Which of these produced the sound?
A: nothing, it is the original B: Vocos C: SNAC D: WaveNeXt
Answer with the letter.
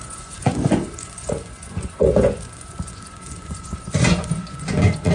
B